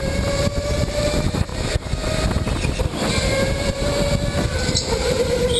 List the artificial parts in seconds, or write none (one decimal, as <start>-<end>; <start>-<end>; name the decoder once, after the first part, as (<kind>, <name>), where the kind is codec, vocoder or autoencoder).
0.0-1.5 (vocoder, BigVGAN v2); 2.8-3.9; 5.1-5.6